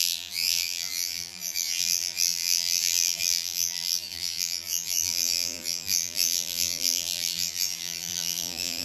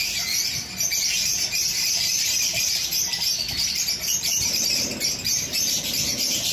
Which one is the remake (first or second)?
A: first